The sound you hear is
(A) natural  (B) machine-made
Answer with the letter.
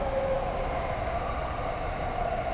A